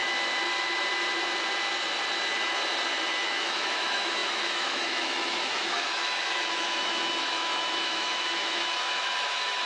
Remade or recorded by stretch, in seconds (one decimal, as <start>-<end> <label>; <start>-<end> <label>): 0.0-3.1 recorded; 3.1-9.7 remade